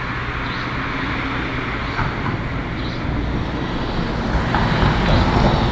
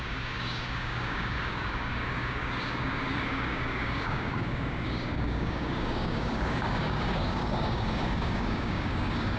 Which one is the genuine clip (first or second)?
first